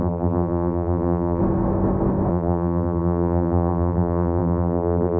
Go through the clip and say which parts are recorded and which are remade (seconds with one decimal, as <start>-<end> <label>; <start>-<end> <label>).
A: 0.0-1.4 remade; 1.4-2.3 recorded; 2.3-5.2 remade